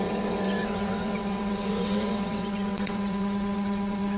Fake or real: fake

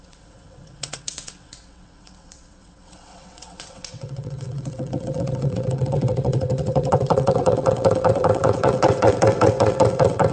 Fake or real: fake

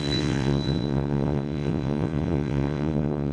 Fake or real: fake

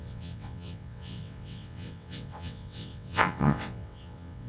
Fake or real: fake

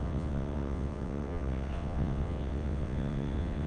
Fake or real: fake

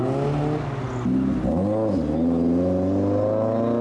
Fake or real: real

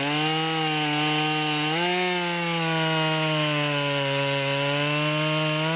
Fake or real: real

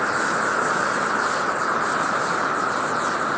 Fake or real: real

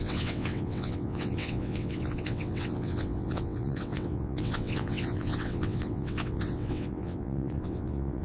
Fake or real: fake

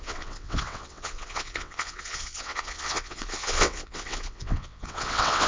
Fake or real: fake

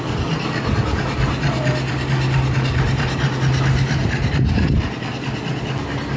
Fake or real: real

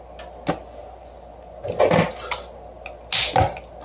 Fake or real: real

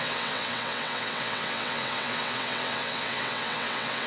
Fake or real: fake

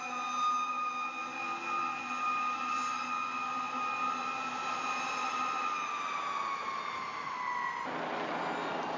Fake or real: real